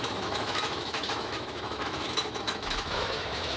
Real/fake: fake